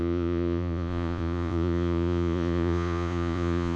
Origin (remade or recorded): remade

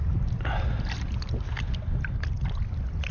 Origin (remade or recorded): recorded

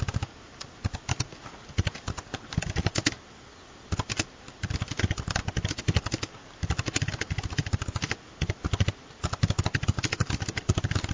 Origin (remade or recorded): recorded